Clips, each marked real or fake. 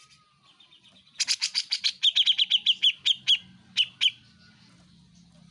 real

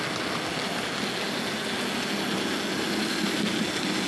real